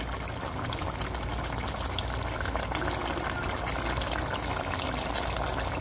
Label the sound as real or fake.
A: real